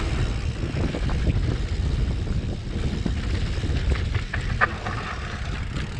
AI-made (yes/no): no